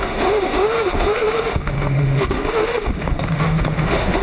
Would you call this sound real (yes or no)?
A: no